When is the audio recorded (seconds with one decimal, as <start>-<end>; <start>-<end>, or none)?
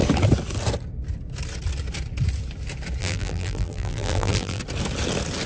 0.0-3.0; 4.6-5.5